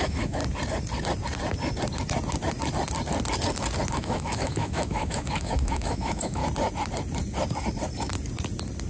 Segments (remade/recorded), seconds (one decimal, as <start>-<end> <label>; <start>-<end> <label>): 0.0-0.4 remade; 0.4-3.9 recorded; 3.9-6.4 remade; 6.4-8.9 recorded

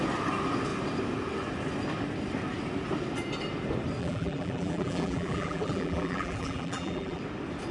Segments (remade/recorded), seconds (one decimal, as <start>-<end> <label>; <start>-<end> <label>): 0.0-4.0 recorded; 4.0-7.2 remade; 7.2-7.7 recorded